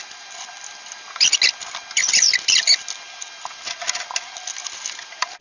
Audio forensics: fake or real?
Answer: real